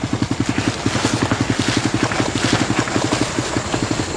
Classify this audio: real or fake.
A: real